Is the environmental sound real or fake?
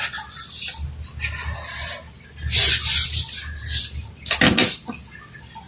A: real